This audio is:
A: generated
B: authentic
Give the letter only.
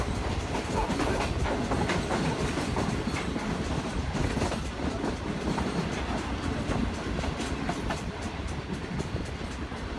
A